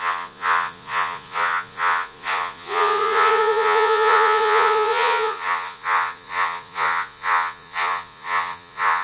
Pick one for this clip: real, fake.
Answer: fake